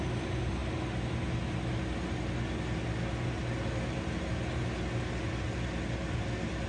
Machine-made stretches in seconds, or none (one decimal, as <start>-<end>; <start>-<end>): none